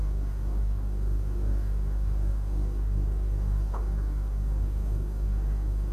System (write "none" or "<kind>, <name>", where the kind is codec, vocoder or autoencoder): codec, DAC